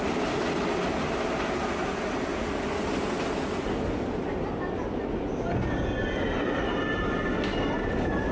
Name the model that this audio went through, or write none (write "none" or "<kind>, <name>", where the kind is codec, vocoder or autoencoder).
none